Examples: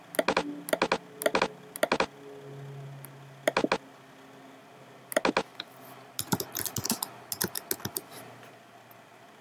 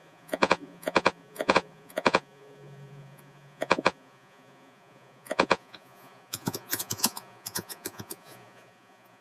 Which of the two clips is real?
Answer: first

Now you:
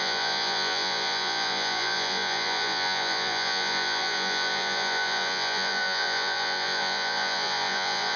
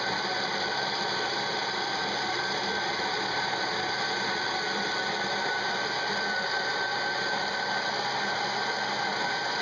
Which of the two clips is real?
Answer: second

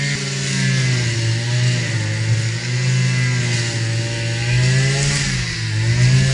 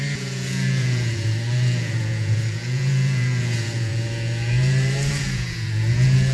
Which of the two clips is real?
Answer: first